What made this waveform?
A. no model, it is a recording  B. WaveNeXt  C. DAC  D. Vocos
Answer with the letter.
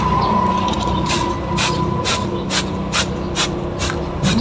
A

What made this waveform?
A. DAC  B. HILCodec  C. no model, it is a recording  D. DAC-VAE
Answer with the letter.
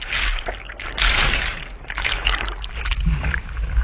A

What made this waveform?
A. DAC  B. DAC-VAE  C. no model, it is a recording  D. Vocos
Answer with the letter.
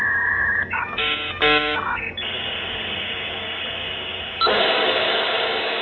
A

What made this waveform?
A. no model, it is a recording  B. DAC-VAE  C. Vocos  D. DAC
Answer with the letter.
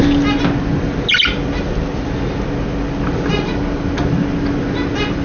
A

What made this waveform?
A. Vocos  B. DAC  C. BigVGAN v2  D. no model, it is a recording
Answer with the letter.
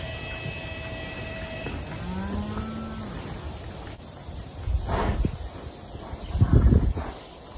D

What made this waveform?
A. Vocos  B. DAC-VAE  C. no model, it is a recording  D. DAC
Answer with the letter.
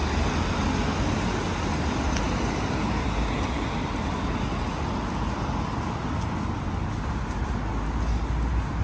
C